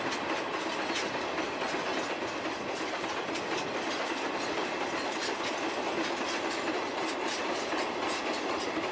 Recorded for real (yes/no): yes